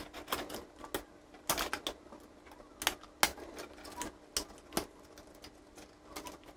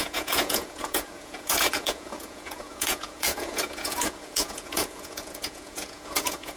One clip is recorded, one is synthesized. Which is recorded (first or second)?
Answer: first